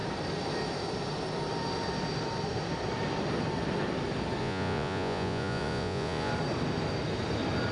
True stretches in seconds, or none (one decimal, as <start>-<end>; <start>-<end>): 0.0-4.4; 6.3-7.7